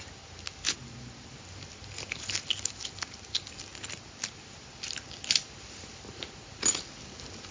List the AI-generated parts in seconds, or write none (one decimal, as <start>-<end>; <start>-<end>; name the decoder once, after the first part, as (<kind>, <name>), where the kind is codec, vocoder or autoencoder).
none